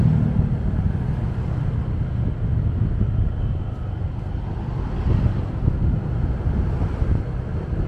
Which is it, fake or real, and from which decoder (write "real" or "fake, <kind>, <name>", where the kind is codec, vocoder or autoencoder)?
real